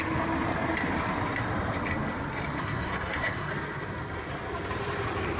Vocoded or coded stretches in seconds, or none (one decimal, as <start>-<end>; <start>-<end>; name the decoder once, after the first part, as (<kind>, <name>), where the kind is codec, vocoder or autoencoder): 2.6-3.5 (codec, SNAC)